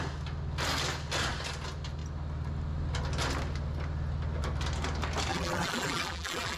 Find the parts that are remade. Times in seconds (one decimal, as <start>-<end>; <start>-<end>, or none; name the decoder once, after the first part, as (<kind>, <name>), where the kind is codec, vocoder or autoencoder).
5.3-6.6 (vocoder, BigVGAN v2)